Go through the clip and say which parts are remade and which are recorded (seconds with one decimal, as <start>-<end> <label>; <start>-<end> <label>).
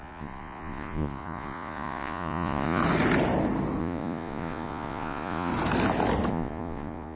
0.0-2.8 remade; 2.8-3.8 recorded; 3.8-5.5 remade; 5.5-6.3 recorded; 6.3-7.2 remade